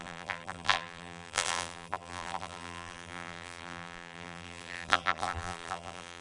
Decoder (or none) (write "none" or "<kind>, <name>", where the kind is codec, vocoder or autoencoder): vocoder, BigVGAN v2